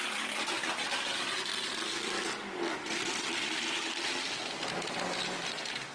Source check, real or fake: real